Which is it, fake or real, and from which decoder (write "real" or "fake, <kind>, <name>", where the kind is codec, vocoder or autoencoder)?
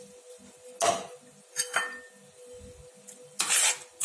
real